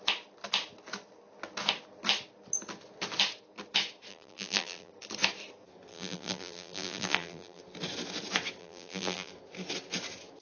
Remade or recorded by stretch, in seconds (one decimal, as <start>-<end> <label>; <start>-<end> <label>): 0.0-4.1 recorded; 4.1-4.9 remade; 4.9-5.9 recorded; 5.9-7.6 remade; 7.6-8.6 recorded; 8.6-9.3 remade; 9.3-10.4 recorded